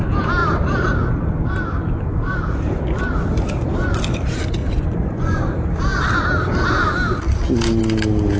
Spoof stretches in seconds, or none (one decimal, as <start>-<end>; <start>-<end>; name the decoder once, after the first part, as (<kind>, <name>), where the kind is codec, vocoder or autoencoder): 4.6-5.4 (vocoder, Vocos)